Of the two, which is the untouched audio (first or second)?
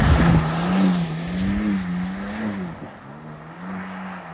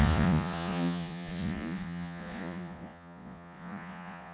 first